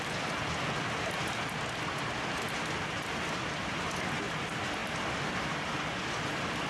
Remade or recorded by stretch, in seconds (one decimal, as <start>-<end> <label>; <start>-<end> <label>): 0.0-6.7 recorded